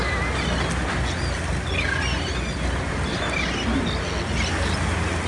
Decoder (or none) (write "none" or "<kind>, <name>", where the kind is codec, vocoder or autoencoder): none